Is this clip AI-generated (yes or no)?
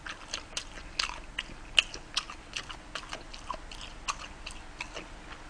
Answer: no